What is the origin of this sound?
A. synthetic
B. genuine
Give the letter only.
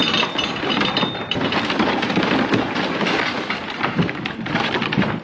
A